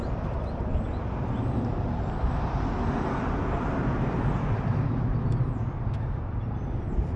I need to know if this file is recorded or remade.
remade